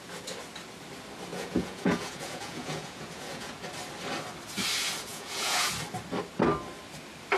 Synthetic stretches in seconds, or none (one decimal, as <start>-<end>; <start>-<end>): 1.3-3.6; 5.1-5.7